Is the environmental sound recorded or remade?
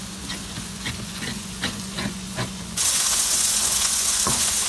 remade